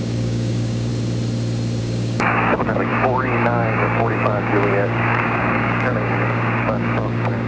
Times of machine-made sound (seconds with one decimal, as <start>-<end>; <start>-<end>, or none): 0.0-0.9; 1.8-7.5